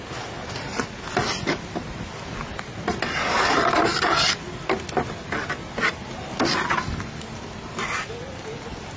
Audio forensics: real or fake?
real